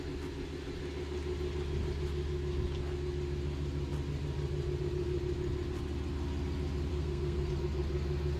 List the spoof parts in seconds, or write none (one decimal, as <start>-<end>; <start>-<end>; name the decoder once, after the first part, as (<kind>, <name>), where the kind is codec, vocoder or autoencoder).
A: 6.9-7.5 (codec, SNAC)